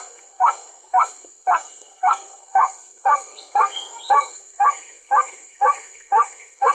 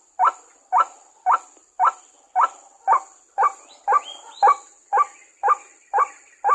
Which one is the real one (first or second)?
second